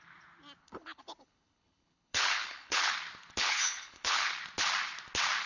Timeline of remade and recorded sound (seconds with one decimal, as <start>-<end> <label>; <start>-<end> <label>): 0.0-0.6 recorded; 0.6-2.9 remade; 2.9-3.4 recorded; 3.4-4.3 remade; 4.3-5.5 recorded

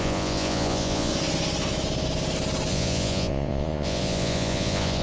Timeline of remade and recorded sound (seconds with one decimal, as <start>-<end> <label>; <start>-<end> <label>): 0.0-1.1 remade; 1.1-2.7 recorded; 2.7-5.0 remade